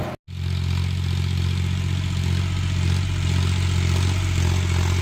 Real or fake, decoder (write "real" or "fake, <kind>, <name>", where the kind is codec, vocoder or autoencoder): real